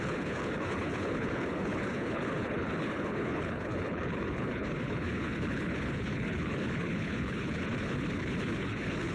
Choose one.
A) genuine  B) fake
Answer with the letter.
B